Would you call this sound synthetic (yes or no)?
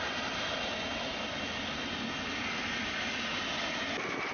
no